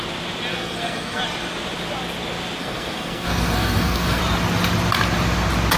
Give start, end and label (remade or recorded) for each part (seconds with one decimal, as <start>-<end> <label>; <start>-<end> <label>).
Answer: 0.0-0.5 recorded; 0.5-1.2 remade; 1.2-2.6 recorded; 2.6-4.2 remade; 4.2-5.8 recorded